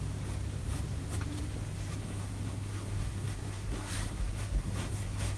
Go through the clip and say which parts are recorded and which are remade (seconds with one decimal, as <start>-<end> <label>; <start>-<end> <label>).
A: 0.0-2.0 recorded; 2.0-5.4 remade